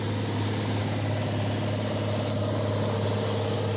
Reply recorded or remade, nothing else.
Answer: recorded